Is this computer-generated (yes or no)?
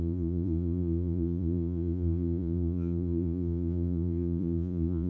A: yes